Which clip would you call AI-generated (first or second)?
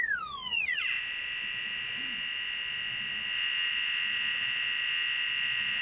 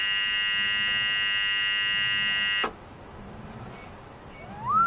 first